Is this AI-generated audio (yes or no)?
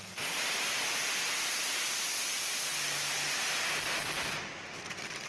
no